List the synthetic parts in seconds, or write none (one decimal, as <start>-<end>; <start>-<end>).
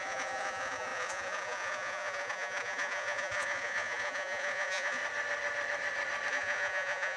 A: 0.0-5.0; 6.3-7.2